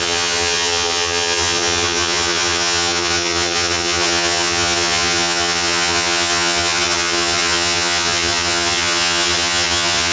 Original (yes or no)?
no